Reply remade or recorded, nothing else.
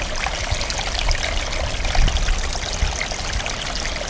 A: recorded